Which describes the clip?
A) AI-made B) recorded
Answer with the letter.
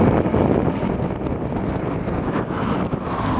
B